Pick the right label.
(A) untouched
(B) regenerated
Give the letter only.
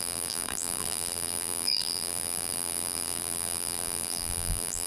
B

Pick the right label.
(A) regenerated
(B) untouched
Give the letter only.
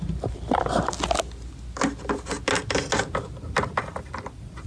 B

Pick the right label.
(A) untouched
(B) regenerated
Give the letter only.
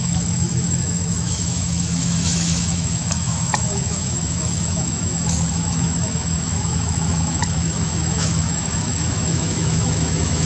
B